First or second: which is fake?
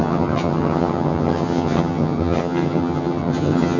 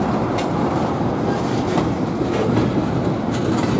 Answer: first